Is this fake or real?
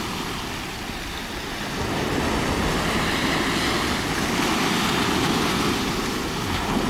real